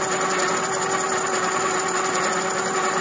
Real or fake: real